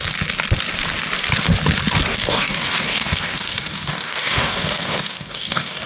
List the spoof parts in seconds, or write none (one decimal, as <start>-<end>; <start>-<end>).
2.1-5.9